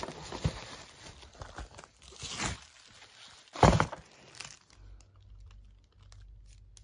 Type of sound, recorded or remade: recorded